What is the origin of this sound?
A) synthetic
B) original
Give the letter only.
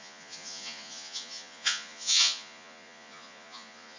A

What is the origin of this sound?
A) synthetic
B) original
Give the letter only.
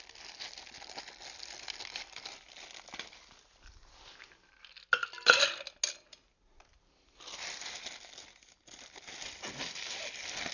B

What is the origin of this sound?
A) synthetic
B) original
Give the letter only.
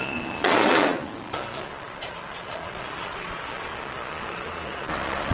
A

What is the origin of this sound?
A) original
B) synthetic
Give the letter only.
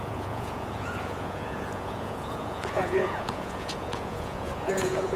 B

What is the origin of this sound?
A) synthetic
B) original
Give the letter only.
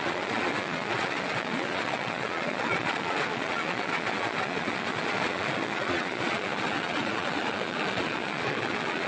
A